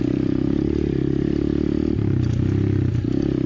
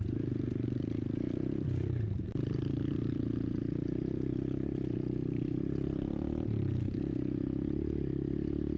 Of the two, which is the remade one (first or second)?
second